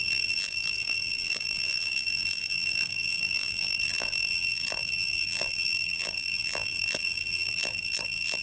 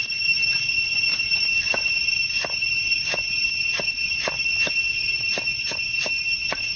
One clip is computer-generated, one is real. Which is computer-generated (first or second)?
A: first